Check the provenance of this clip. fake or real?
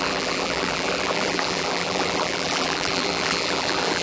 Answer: fake